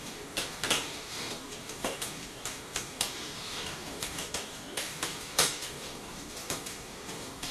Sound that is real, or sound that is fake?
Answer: fake